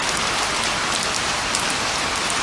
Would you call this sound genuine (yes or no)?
yes